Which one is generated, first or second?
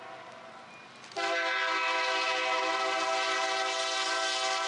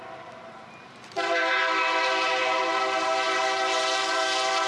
second